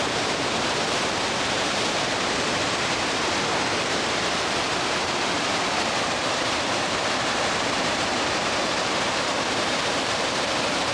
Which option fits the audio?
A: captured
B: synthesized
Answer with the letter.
B